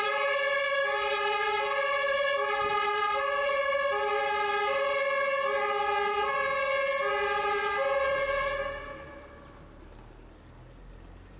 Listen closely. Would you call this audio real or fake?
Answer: real